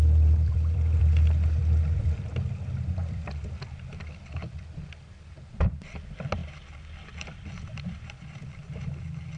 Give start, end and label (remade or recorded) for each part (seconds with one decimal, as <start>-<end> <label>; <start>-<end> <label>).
0.0-6.4 remade; 6.4-7.5 recorded; 7.5-9.4 remade

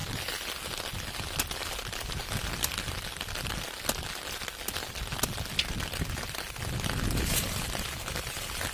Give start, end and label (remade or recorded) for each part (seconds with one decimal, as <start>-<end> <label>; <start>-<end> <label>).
0.0-8.7 recorded

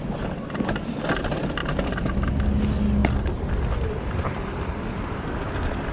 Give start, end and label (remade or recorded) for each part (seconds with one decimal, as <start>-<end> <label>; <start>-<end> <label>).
0.0-1.6 recorded; 1.6-2.3 remade; 2.3-3.0 recorded; 3.0-5.5 remade; 5.5-5.9 recorded

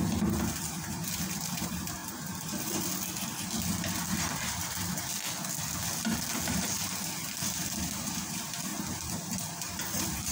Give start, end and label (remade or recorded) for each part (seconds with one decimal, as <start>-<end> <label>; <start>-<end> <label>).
0.0-2.0 remade; 2.0-7.2 recorded; 7.2-8.7 remade; 8.7-9.6 recorded; 9.6-10.3 remade